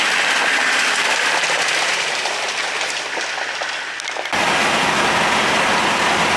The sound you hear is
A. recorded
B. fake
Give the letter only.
A